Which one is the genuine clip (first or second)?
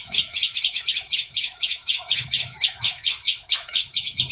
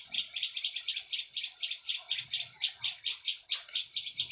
second